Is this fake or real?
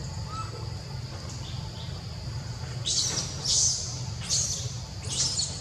real